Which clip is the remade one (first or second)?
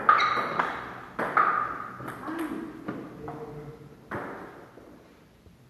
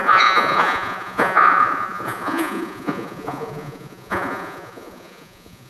second